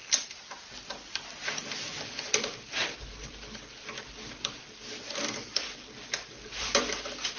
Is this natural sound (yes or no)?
no